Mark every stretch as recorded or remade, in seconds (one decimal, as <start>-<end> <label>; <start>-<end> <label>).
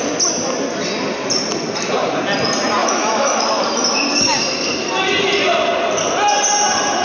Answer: 0.0-2.8 recorded; 2.8-3.6 remade; 3.6-7.0 recorded